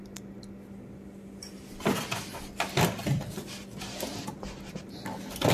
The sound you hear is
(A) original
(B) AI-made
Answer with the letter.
A